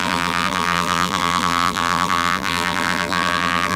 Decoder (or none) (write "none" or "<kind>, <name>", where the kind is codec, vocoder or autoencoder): vocoder, BigVGAN v2